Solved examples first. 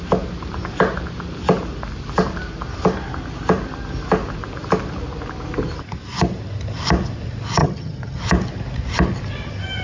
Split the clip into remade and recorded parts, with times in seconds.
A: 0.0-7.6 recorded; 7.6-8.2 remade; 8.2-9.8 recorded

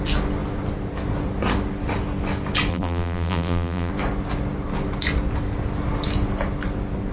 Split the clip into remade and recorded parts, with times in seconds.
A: 0.0-2.7 recorded; 2.7-3.9 remade; 3.9-7.1 recorded